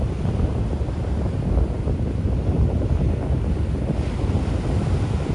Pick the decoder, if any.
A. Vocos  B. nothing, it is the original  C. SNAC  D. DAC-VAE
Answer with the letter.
B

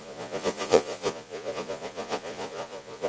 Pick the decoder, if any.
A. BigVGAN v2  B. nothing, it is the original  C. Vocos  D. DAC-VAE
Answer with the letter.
C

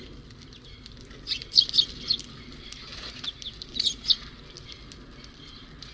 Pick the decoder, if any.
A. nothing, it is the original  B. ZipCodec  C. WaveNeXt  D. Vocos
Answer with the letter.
A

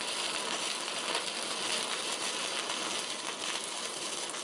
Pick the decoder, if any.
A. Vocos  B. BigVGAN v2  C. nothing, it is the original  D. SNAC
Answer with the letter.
C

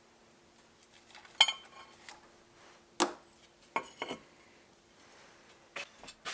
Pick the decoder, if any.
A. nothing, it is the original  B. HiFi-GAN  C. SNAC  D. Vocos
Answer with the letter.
A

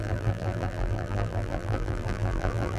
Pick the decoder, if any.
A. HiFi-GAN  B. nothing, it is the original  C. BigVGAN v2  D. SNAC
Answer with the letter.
C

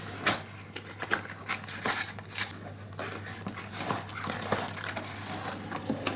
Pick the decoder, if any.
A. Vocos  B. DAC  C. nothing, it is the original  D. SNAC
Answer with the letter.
C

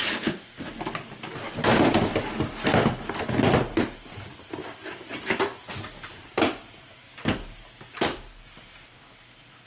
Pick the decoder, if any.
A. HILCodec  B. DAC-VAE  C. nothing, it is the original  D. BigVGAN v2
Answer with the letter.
C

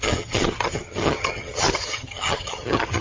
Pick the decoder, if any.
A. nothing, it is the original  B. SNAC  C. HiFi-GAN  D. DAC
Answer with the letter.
C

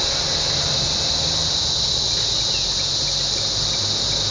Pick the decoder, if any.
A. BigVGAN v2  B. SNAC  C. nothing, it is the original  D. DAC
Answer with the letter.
C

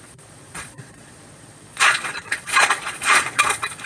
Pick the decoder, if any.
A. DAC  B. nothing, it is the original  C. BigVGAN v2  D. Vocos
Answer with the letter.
D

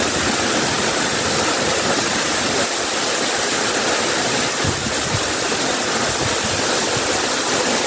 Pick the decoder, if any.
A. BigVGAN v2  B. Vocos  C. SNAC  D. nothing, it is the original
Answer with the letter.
D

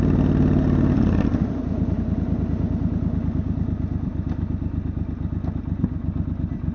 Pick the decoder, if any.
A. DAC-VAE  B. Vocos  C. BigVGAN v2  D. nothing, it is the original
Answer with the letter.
D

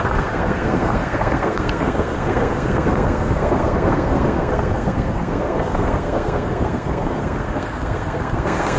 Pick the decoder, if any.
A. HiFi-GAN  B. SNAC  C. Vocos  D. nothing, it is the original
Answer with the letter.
B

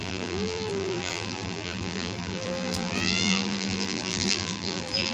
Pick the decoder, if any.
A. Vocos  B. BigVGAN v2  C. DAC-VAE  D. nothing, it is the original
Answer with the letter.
B